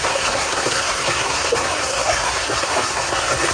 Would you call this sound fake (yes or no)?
yes